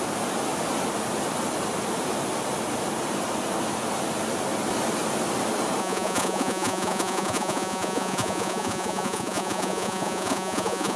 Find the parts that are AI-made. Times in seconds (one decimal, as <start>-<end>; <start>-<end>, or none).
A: 5.8-11.0